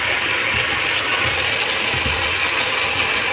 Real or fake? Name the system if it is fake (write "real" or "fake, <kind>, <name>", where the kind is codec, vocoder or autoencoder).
real